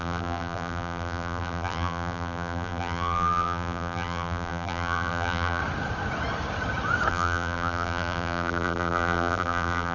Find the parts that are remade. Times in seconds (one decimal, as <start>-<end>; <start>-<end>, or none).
0.0-5.6; 7.1-9.9